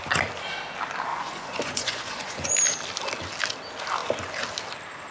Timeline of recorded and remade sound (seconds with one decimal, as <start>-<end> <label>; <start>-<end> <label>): 0.0-1.1 recorded; 1.1-2.5 remade; 2.5-5.1 recorded